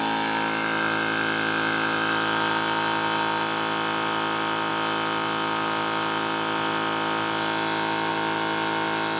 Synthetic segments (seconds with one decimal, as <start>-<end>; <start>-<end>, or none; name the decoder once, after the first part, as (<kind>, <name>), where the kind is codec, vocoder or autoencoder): none